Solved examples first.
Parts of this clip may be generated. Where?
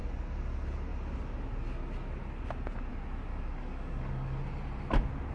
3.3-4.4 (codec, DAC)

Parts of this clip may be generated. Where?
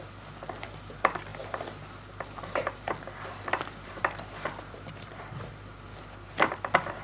0.0-7.0 (vocoder, BigVGAN v2)